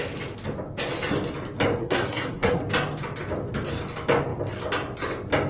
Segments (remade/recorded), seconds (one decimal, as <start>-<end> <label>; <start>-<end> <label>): 0.0-1.8 recorded; 1.8-2.6 remade; 2.6-5.5 recorded